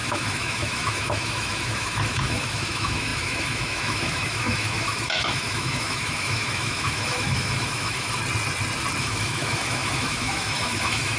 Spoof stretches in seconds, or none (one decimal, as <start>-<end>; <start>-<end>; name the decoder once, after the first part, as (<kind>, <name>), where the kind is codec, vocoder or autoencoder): 0.0-8.2 (autoencoder, DAC-VAE); 9.0-11.2